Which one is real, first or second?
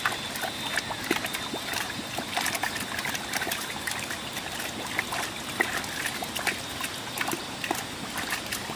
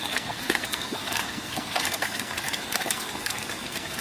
first